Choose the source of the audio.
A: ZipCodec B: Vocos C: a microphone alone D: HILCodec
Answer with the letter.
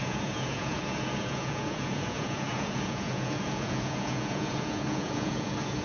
B